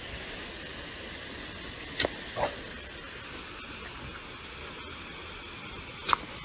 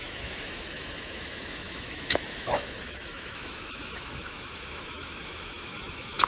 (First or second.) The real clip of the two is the first